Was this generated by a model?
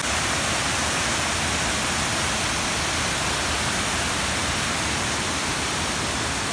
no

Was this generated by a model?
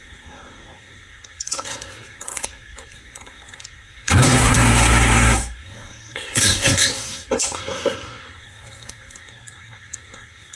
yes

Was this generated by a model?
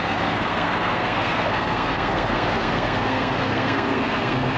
yes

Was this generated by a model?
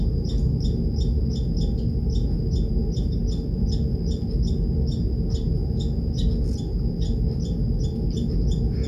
no